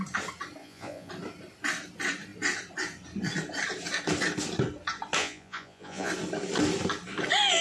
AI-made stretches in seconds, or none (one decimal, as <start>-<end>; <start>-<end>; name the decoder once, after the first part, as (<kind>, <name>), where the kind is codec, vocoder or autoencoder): 0.6-1.1 (vocoder, Vocos); 5.2-6.1